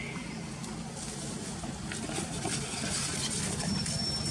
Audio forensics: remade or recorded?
recorded